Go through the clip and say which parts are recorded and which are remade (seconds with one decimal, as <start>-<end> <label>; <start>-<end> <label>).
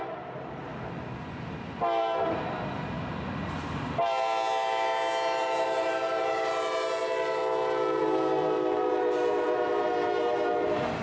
0.0-0.7 remade; 0.7-5.4 recorded; 5.4-7.4 remade; 7.4-8.0 recorded; 8.0-11.0 remade